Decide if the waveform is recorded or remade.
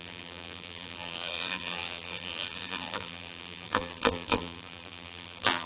remade